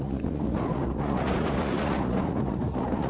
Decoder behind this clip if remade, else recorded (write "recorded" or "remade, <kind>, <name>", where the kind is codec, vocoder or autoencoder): remade, vocoder, Vocos